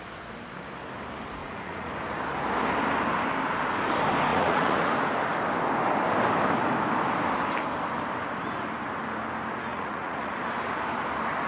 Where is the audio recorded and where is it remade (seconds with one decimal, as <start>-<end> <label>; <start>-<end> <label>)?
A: 0.0-1.4 recorded; 1.4-1.9 remade; 1.9-4.3 recorded; 4.3-4.9 remade; 4.9-9.7 recorded; 9.7-10.4 remade; 10.4-11.5 recorded